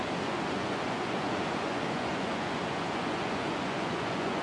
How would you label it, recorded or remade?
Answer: remade